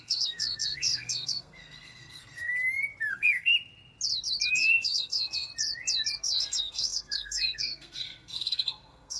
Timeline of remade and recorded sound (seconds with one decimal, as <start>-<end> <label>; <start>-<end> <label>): 0.0-2.5 remade; 2.5-3.1 recorded; 3.1-3.5 remade; 3.5-4.5 recorded; 4.5-5.5 remade; 5.5-6.2 recorded; 6.2-9.2 remade